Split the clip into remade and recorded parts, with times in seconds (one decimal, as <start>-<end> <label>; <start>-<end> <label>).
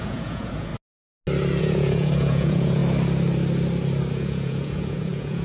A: 0.0-0.7 remade; 0.7-1.6 recorded; 1.6-2.8 remade; 2.8-4.1 recorded; 4.1-5.4 remade